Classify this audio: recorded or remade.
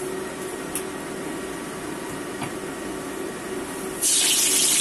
recorded